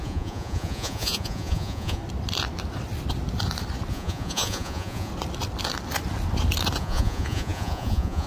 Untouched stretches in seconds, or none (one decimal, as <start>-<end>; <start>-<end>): 2.0-3.9; 5.1-6.8